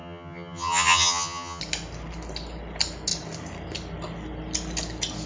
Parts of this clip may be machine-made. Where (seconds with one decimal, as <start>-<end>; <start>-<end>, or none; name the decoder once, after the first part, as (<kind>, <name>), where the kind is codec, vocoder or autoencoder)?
0.0-1.6 (vocoder, HiFi-GAN)